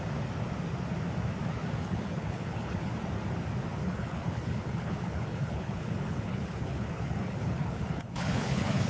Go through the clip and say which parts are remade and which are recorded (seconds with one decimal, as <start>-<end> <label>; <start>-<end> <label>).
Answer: 0.0-1.8 recorded; 1.8-2.9 remade; 2.9-3.8 recorded; 3.8-8.9 remade